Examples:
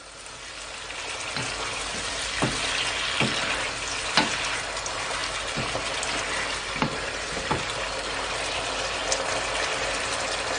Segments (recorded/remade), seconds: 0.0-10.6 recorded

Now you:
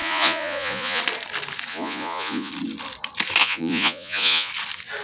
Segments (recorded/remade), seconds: 0.0-1.0 remade; 1.0-1.7 recorded; 1.7-2.5 remade; 2.5-3.4 recorded; 3.4-4.5 remade; 4.5-5.0 recorded

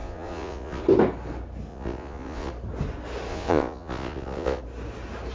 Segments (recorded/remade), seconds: 0.0-0.8 remade; 0.8-1.7 recorded; 1.7-2.5 remade; 2.5-3.3 recorded; 3.3-4.6 remade; 4.6-5.3 recorded

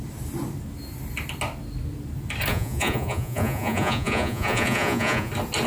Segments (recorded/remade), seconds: 0.0-2.5 recorded; 2.5-5.3 remade; 5.3-5.7 recorded

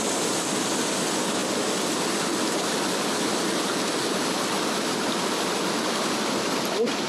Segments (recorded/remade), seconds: 0.0-7.1 recorded